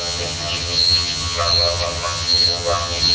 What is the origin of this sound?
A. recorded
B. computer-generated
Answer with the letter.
B